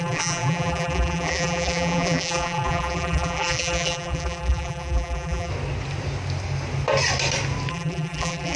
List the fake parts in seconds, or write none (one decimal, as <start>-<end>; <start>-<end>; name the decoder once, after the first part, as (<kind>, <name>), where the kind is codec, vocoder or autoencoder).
0.0-5.5 (vocoder, BigVGAN v2); 7.7-8.6